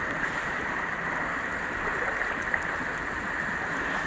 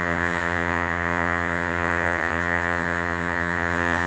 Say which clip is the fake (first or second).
second